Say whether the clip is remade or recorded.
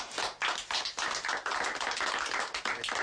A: recorded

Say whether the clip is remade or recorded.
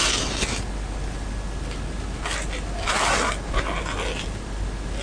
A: recorded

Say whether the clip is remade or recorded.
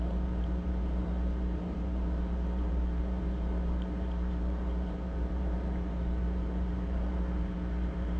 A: remade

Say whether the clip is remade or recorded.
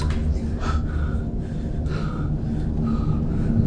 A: recorded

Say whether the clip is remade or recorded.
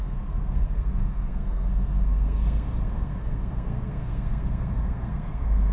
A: remade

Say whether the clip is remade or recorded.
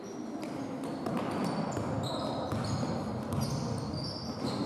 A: recorded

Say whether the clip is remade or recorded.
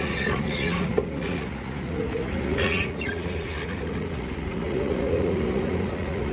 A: remade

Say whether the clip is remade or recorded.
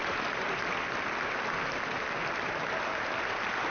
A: recorded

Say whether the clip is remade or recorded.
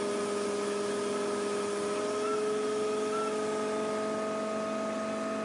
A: recorded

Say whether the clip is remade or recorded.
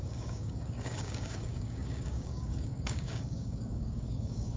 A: remade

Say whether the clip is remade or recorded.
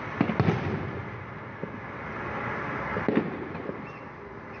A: recorded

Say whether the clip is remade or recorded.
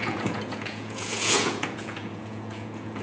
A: remade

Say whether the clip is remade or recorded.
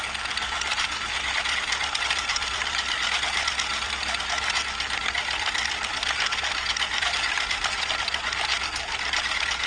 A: recorded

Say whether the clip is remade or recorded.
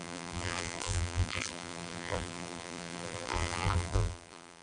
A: remade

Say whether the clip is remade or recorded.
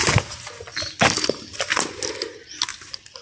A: recorded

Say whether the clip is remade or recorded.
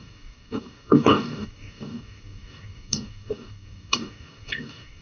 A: remade